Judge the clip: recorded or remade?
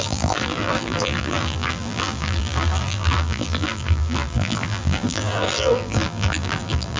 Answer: remade